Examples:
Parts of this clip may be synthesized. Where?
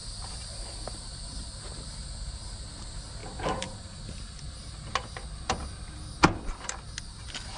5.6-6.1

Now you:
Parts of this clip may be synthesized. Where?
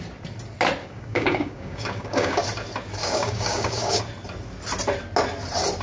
0.8-2.4; 3.0-4.0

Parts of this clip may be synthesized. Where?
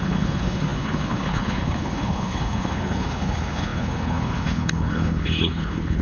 0.0-6.0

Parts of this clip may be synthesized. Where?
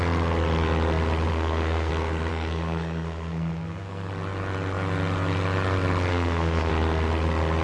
1.3-1.9; 2.3-4.1; 6.1-6.7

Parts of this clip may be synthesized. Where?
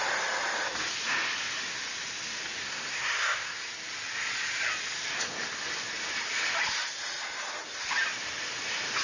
2.6-3.7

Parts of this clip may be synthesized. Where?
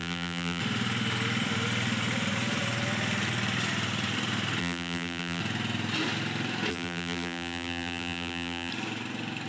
0.0-0.6; 4.6-5.4; 6.7-8.7